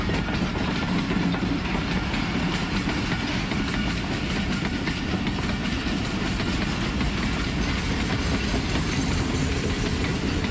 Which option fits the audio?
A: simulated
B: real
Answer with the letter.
B